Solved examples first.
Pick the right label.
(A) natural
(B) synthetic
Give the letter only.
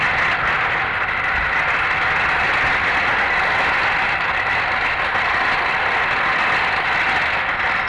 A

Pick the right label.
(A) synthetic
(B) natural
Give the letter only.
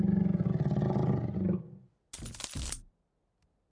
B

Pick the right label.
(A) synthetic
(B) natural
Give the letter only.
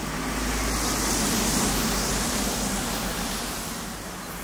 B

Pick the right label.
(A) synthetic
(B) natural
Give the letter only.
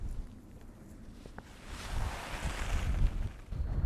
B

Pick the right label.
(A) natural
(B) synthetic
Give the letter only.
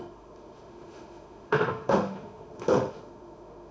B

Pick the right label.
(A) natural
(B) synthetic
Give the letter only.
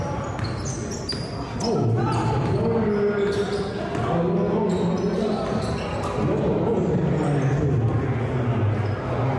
A